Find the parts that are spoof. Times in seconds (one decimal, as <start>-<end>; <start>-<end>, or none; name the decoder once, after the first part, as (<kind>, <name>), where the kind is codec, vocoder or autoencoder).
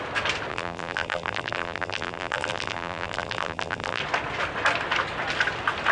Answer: 0.5-4.0 (vocoder, BigVGAN v2)